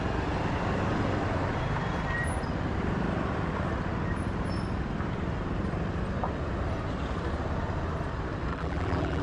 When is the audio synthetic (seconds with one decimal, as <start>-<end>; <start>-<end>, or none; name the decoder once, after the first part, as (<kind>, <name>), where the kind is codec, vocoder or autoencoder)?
8.5-9.2 (vocoder, BigVGAN v2)